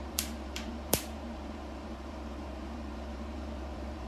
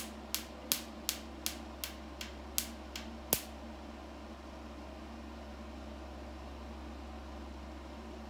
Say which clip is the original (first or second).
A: second